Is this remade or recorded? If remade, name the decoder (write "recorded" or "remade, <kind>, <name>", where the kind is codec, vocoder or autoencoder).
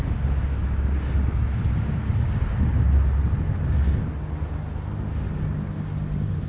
recorded